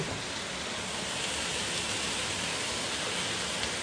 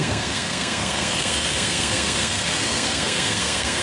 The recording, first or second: first